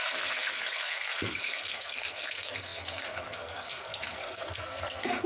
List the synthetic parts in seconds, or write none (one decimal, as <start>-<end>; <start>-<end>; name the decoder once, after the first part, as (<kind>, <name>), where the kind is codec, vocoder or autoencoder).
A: 0.0-5.3 (codec, SNAC)